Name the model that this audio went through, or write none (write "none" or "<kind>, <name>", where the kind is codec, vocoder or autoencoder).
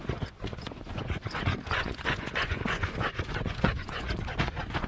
vocoder, Vocos